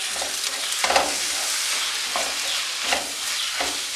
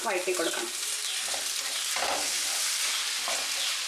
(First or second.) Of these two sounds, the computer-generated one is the second